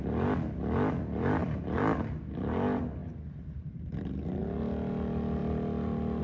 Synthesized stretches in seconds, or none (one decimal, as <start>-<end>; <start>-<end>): 1.4-2.0; 5.4-6.2